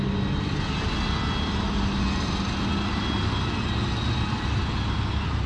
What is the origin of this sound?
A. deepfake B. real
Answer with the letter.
B